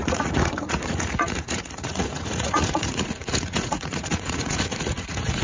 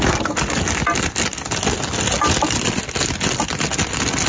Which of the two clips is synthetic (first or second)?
first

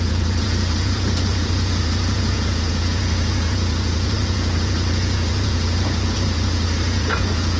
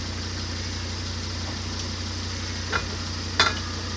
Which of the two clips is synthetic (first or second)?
first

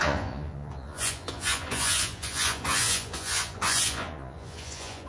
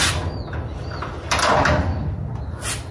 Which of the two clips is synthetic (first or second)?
first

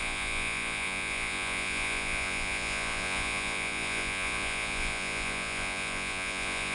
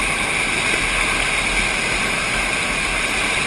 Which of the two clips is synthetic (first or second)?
first